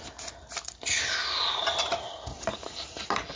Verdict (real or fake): real